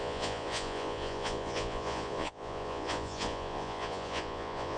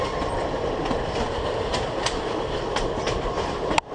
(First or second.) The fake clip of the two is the first